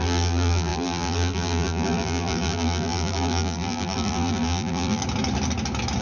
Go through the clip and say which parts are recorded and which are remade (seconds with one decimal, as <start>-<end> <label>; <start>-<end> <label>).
0.0-5.0 remade; 5.0-6.0 recorded